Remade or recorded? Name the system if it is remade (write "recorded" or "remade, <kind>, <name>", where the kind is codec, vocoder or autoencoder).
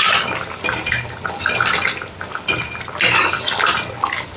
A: recorded